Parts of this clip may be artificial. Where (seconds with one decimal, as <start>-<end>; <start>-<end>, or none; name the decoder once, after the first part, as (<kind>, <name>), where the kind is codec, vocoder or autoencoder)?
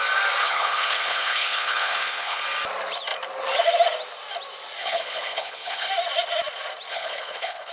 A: 0.4-2.4 (codec, HILCodec); 4.8-5.9; 6.9-7.7